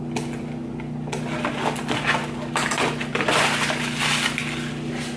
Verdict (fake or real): real